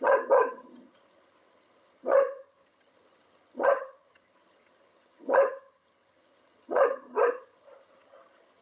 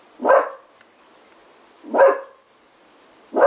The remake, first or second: first